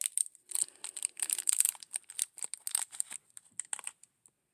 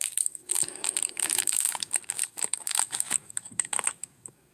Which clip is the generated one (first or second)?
second